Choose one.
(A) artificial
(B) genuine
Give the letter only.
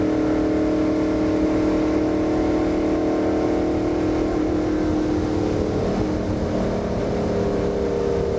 B